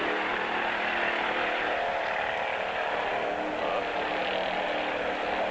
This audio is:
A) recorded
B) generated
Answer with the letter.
A